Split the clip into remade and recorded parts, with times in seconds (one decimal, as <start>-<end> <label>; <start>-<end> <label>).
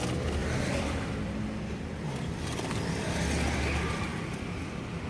0.0-0.4 recorded; 0.4-1.0 remade; 1.0-4.1 recorded; 4.1-5.1 remade